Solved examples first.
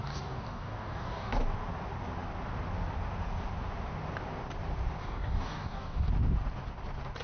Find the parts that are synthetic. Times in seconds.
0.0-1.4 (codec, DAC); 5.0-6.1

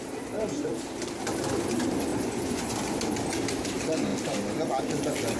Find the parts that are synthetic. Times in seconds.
2.1-2.7 (vocoder, Vocos)

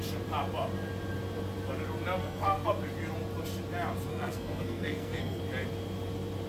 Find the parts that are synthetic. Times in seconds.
2.2-2.7 (codec, SNAC); 4.1-5.4

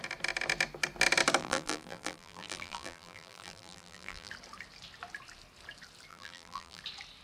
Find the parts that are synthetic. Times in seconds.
1.4-4.3 (vocoder, BigVGAN v2); 6.1-6.8

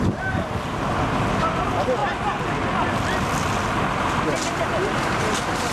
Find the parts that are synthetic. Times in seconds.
none

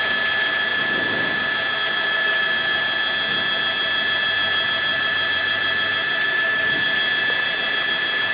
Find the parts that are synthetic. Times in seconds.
4.9-6.7 (vocoder, BigVGAN v2)

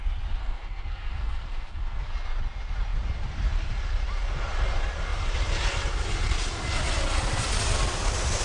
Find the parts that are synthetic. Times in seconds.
0.4-2.1 (codec, SNAC)

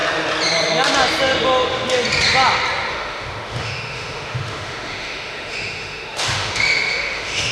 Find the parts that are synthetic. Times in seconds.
2.9-7.5 (autoencoder, DAC-VAE)